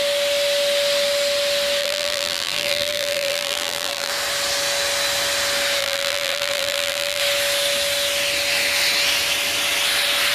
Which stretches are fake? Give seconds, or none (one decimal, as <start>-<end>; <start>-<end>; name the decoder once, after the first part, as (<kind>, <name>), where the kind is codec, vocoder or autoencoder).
1.8-4.1 (vocoder, BigVGAN v2); 5.8-7.2